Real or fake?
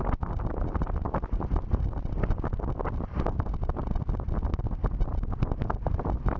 real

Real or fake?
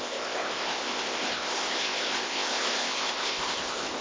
fake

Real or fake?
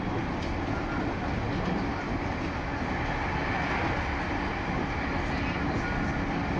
real